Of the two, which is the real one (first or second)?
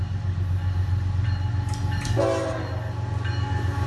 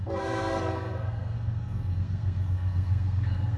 first